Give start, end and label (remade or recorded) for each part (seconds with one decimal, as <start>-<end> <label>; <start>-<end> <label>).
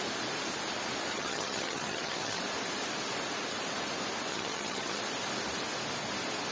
0.0-1.1 recorded; 1.1-2.4 remade; 2.4-4.3 recorded; 4.3-5.0 remade; 5.0-6.5 recorded